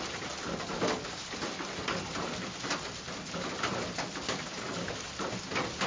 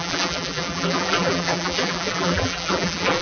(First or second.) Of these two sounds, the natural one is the first